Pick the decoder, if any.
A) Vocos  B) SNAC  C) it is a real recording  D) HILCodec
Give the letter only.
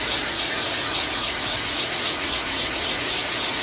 A